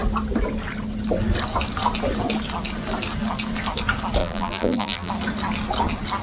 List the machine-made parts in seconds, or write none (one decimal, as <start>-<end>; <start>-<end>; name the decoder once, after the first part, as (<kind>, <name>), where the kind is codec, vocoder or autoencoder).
4.2-5.1 (vocoder, BigVGAN v2)